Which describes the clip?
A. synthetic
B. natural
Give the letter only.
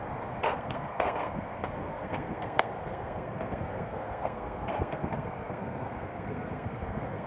A